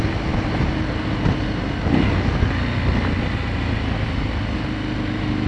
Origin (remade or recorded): recorded